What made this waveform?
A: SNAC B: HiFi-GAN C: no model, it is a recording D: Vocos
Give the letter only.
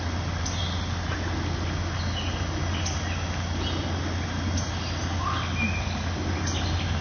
C